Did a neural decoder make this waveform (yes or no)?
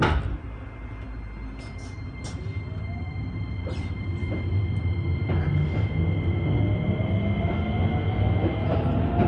no